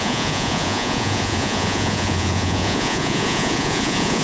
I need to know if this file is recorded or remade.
remade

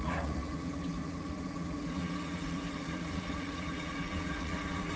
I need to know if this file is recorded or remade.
remade